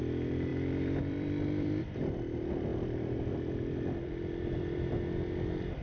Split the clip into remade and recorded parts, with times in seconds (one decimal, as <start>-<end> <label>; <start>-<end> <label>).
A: 0.0-0.5 recorded; 0.5-1.8 remade; 1.8-2.7 recorded; 2.7-4.9 remade; 4.9-5.8 recorded